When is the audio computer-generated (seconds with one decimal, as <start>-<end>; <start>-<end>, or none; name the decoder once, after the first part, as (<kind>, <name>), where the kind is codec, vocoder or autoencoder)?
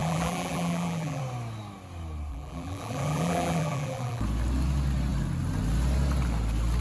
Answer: 0.0-1.2 (vocoder, BigVGAN v2); 2.3-4.2